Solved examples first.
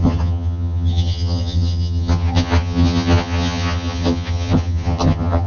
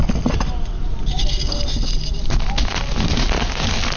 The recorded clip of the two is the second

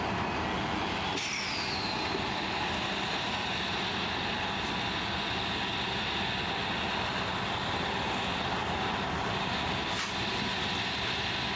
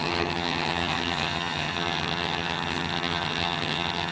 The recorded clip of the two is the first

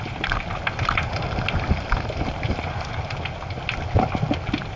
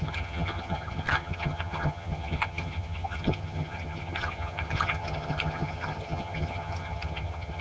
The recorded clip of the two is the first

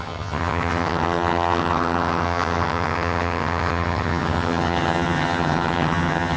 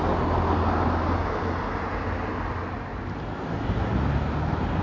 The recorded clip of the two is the second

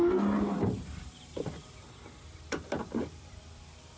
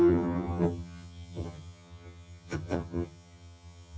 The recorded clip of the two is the first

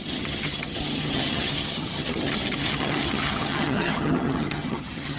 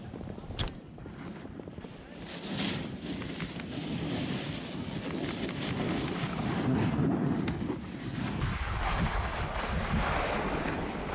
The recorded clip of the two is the second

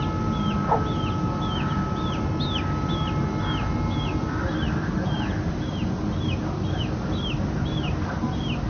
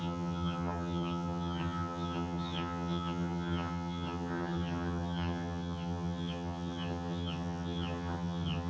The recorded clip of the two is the first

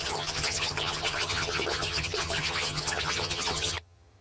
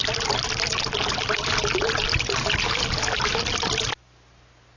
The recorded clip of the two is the second